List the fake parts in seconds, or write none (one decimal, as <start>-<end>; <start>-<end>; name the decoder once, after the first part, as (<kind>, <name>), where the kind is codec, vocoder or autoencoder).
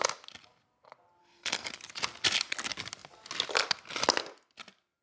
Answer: 1.2-1.7 (codec, SNAC)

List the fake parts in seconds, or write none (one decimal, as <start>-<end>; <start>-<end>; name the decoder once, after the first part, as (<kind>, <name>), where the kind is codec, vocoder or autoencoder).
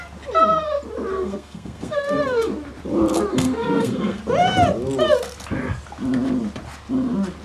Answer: 1.1-2.5 (codec, SNAC); 3.3-4.2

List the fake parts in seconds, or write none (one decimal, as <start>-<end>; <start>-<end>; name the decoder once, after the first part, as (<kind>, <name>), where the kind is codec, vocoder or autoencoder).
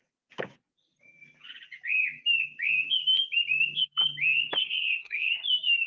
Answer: 4.6-5.3 (codec, SNAC)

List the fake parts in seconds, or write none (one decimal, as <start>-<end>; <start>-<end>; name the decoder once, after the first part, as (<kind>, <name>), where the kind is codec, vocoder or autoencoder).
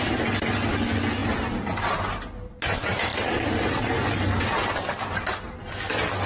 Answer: none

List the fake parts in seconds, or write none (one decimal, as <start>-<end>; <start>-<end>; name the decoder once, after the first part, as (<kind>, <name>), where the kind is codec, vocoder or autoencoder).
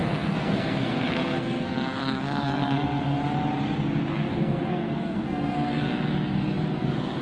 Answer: 0.0-3.2 (codec, SNAC); 4.3-5.9; 6.8-7.2